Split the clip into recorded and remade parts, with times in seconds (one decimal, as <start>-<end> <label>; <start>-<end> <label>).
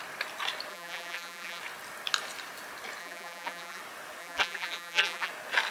0.0-0.7 recorded; 0.7-1.6 remade; 1.6-3.0 recorded; 3.0-3.8 remade; 3.8-4.2 recorded; 4.2-5.3 remade; 5.3-5.7 recorded